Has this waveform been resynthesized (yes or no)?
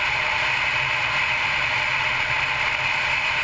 no